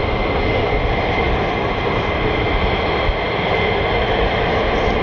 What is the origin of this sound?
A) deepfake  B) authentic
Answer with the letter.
B